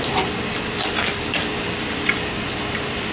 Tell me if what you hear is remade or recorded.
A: remade